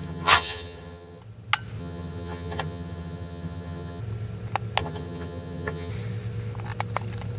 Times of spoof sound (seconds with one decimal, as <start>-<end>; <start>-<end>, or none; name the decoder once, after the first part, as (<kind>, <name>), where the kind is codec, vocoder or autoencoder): 0.0-1.2 (vocoder, HiFi-GAN); 1.8-4.0; 4.8-5.9